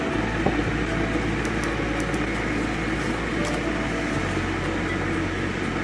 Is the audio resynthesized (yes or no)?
no